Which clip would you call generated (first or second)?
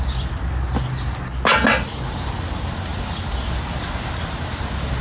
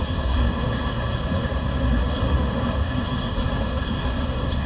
second